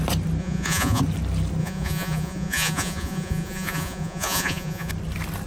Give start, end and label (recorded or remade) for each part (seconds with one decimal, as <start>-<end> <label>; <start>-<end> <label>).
0.0-0.4 recorded; 0.4-1.0 remade; 1.0-1.6 recorded; 1.6-4.9 remade; 4.9-5.5 recorded